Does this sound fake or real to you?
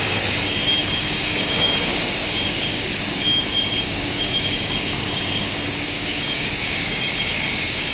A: fake